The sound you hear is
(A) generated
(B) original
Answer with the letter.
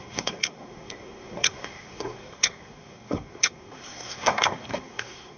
A